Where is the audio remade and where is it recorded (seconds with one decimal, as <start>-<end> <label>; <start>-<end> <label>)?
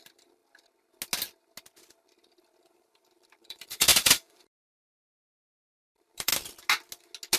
0.0-0.4 remade; 0.4-2.6 recorded; 2.6-6.3 remade; 6.3-7.4 recorded